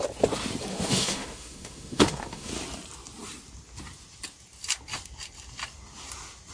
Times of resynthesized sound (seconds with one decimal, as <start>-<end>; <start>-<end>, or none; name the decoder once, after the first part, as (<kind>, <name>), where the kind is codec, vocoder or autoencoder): 0.7-2.5 (autoencoder, DAC-VAE)